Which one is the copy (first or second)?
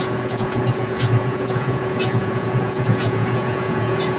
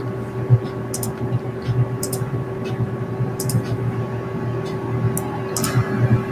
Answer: first